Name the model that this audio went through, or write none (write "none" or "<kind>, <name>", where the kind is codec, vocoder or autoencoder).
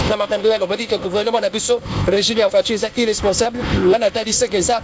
codec, ZipCodec